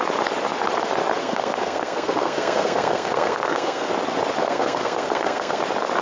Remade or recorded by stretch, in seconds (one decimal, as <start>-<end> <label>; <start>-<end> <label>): 0.0-1.2 recorded; 1.2-3.9 remade; 3.9-4.4 recorded; 4.4-5.6 remade; 5.6-6.0 recorded